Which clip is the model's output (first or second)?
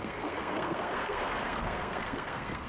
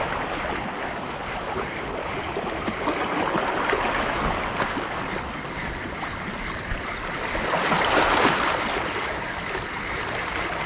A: first